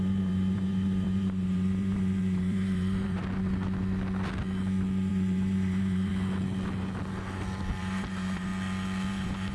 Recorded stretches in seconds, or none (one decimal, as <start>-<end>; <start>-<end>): 3.2-5.1; 6.1-7.8; 8.5-9.1